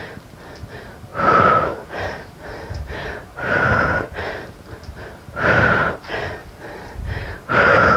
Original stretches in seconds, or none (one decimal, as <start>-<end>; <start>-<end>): 0.0-1.1; 5.9-6.4; 7.5-8.0